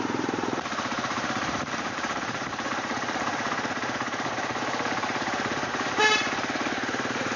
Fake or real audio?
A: fake